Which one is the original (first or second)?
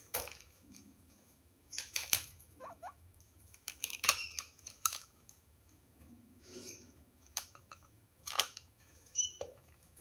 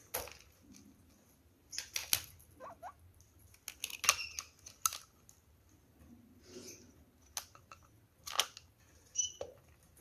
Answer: second